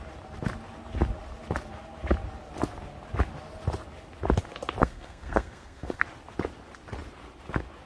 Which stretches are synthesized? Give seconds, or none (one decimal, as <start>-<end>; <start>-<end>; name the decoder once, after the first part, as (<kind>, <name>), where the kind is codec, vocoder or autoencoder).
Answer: 4.8-6.0 (codec, SNAC)